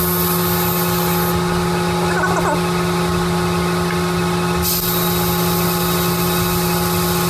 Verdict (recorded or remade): recorded